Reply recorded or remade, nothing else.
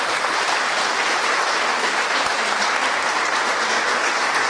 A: recorded